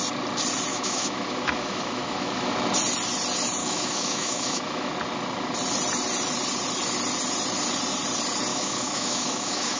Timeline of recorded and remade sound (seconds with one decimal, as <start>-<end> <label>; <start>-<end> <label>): 0.0-0.7 recorded; 0.7-2.5 remade; 2.5-3.6 recorded; 3.6-4.9 remade; 4.9-8.5 recorded; 8.5-9.8 remade